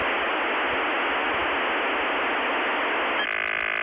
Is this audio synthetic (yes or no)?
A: no